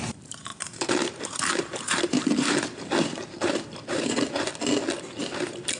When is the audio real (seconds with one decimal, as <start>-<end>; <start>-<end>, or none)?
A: 4.5-5.2

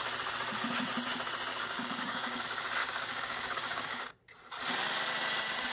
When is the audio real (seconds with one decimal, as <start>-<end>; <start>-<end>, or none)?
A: 0.0-1.5; 2.4-2.8; 4.1-5.7

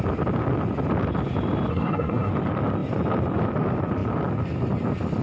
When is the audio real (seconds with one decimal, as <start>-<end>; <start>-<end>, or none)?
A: 0.0-1.7; 2.3-5.2